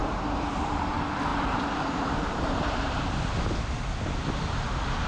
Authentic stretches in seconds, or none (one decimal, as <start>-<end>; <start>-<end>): 0.9-1.3; 3.4-5.1